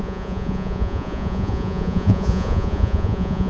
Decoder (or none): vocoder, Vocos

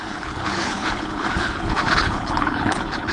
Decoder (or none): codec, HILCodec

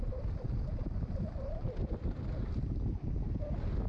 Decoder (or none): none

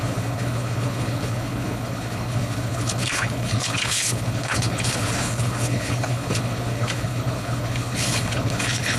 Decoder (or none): codec, HILCodec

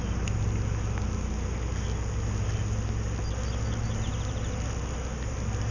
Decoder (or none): none